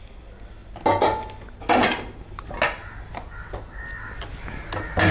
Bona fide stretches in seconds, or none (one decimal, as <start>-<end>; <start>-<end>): 0.0-5.1